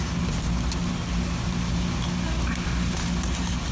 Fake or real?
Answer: real